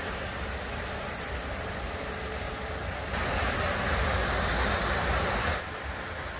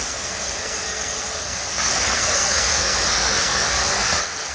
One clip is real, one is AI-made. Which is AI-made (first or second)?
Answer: second